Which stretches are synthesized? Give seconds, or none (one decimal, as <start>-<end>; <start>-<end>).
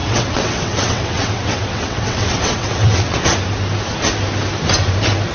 0.0-3.2